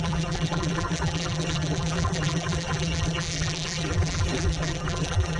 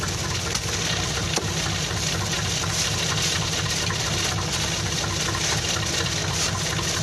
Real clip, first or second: second